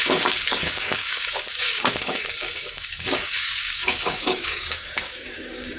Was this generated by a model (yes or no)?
yes